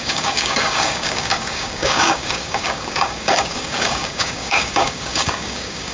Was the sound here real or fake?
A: fake